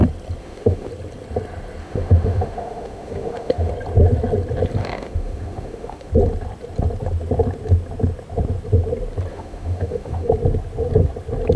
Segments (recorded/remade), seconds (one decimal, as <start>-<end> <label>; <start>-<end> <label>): 0.0-0.4 recorded; 0.4-0.9 remade; 0.9-1.8 recorded; 1.8-3.7 remade; 3.7-4.8 recorded; 4.8-6.1 remade; 6.1-9.3 recorded; 9.3-10.3 remade; 10.3-11.6 recorded